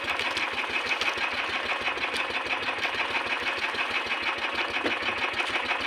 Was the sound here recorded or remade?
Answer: recorded